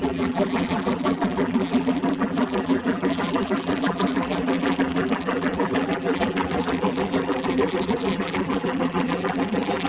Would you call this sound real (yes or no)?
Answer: no